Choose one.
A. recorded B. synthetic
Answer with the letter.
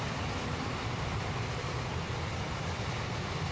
A